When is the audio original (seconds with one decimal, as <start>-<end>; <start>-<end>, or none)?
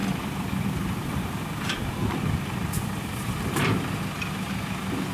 0.6-2.0; 4.0-5.1